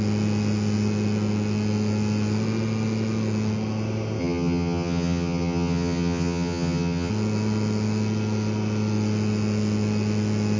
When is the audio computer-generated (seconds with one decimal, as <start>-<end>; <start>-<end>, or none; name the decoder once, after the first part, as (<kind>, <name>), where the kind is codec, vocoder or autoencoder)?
4.2-7.1 (vocoder, HiFi-GAN)